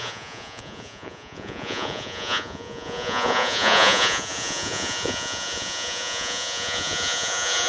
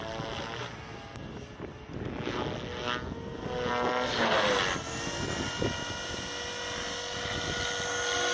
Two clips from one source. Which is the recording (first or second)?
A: second